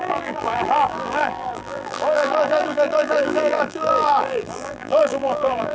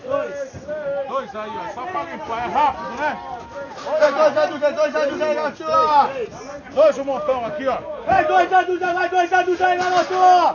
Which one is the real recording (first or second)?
second